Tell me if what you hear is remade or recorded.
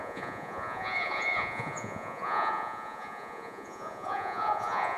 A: remade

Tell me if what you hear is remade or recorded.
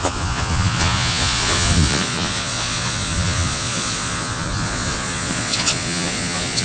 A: remade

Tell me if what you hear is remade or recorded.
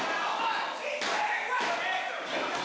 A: recorded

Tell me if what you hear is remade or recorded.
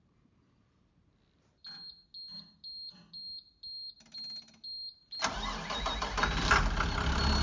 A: recorded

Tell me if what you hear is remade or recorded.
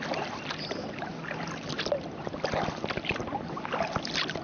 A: recorded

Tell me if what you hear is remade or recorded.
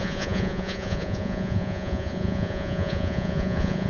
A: remade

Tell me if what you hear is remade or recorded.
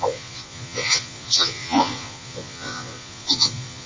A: remade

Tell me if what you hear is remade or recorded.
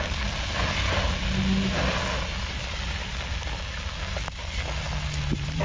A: recorded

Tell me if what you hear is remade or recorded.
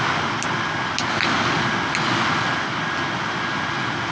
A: recorded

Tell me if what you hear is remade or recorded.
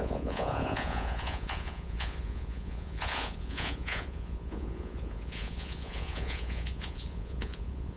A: remade